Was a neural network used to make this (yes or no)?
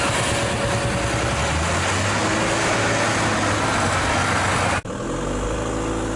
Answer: no